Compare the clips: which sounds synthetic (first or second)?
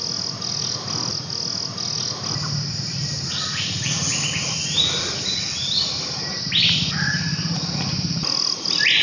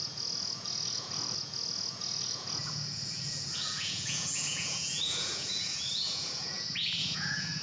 second